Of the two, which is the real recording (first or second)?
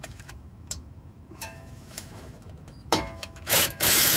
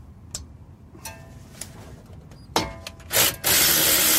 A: second